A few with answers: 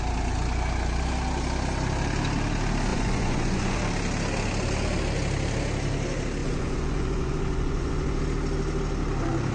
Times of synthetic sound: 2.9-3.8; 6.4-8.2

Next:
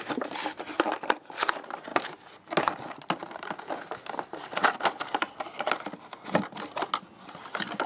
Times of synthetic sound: none

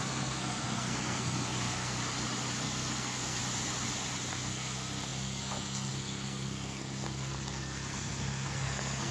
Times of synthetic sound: 0.0-2.0; 2.6-3.4; 4.3-9.1

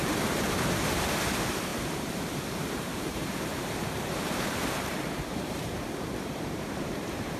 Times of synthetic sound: 0.0-7.4

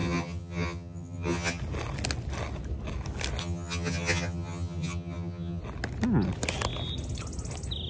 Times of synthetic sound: 0.0-1.6; 3.4-5.6

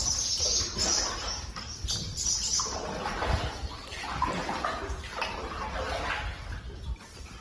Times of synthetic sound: none

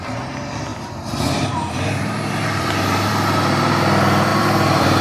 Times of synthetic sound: 0.7-3.1; 4.3-5.0

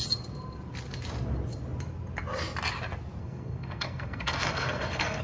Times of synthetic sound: 3.2-5.2